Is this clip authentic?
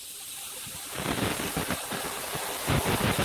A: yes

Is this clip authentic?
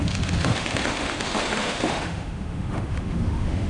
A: no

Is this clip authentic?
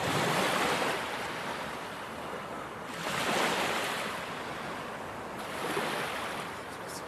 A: yes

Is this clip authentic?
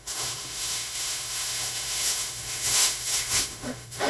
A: no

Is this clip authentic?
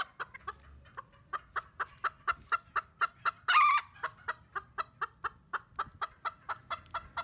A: yes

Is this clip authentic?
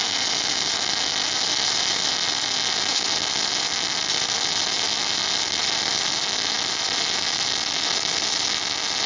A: yes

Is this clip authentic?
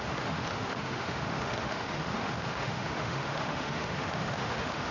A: no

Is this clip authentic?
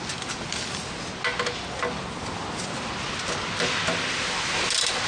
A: yes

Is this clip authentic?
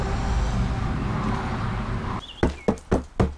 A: yes